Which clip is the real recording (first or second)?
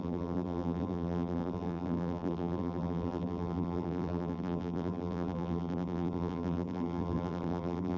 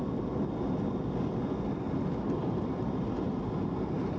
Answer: second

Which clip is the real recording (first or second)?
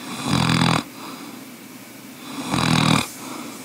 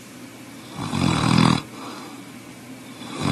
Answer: first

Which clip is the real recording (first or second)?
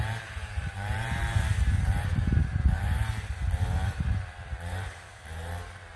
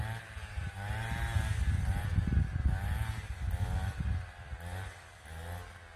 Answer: second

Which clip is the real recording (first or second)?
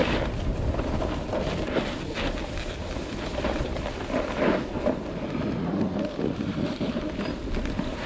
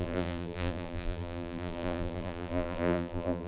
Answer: first